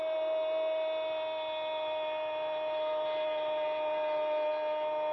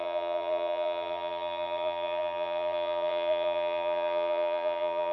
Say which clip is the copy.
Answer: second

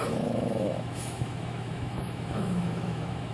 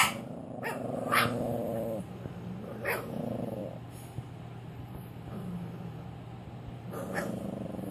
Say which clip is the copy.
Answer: first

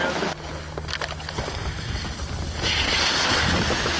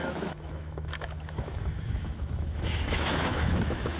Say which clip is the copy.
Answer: second